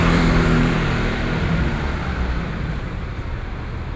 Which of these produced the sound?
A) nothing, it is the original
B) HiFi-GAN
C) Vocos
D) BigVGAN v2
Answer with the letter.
D